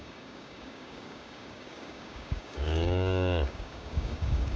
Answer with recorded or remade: remade